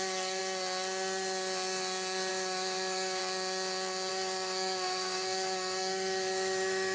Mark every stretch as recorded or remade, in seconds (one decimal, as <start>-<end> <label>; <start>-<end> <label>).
0.0-0.4 remade; 0.4-2.3 recorded; 2.3-3.2 remade; 3.2-4.1 recorded; 4.1-6.9 remade